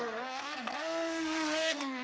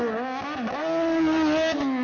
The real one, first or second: second